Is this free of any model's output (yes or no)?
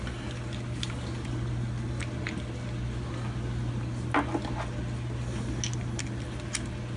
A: yes